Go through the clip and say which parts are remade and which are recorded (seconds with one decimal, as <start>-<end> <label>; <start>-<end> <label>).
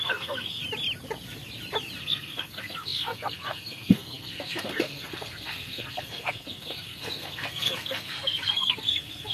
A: 0.0-0.6 remade; 0.6-2.0 recorded; 2.0-9.3 remade